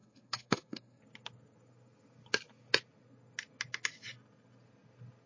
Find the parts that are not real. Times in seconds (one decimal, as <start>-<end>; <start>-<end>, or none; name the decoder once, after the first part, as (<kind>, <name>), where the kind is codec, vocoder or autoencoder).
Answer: 0.0-1.0 (codec, SNAC)